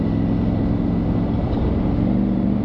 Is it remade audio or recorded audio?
recorded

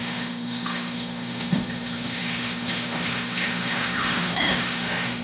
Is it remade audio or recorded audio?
remade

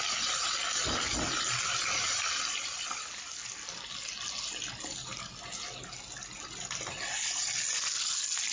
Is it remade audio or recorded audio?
recorded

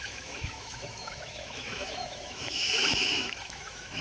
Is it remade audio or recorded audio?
remade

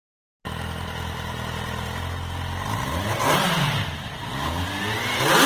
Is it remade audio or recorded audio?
recorded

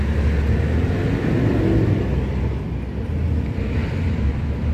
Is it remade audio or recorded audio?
recorded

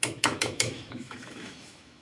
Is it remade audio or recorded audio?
remade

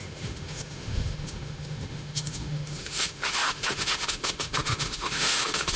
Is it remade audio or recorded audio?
remade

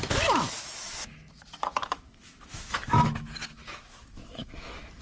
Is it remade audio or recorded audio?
remade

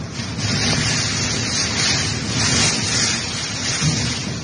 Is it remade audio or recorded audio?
recorded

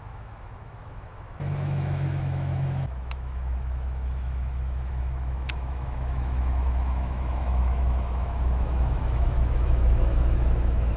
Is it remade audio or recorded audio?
remade